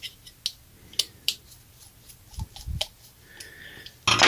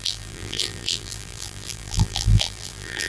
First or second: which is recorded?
first